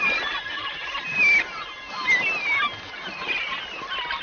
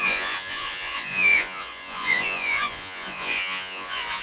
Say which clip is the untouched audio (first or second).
first